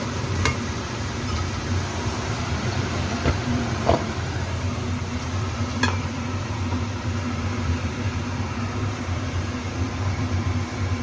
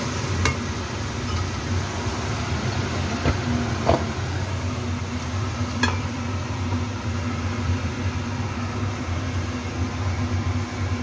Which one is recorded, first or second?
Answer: second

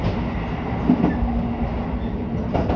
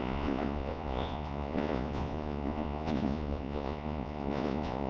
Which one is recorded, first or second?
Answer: first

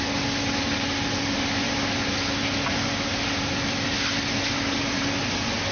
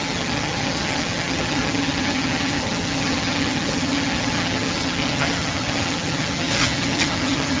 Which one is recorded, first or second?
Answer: first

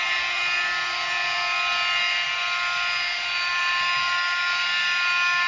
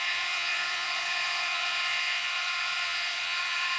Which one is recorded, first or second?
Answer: first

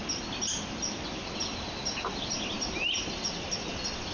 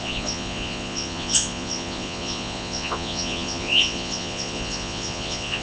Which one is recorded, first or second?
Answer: first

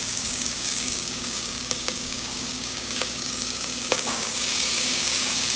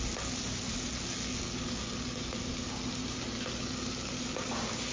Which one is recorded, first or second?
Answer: second